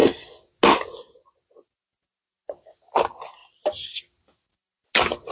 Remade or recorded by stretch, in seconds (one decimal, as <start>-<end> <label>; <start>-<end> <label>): 0.0-5.3 recorded